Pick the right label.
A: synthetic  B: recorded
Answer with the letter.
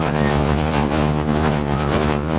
A